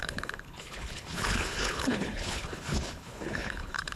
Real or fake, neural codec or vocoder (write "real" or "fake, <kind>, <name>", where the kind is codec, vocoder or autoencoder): fake, codec, HILCodec